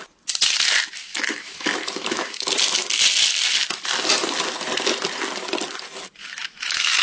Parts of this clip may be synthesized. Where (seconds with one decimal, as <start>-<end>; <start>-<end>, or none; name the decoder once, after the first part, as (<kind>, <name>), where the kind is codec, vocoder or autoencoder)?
1.0-2.5 (autoencoder, DAC-VAE); 6.2-7.0